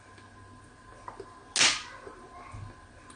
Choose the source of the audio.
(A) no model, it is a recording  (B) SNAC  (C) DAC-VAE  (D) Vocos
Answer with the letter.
A